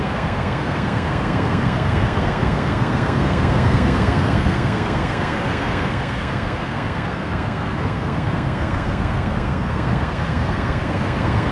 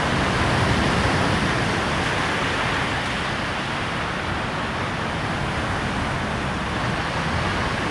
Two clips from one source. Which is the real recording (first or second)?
second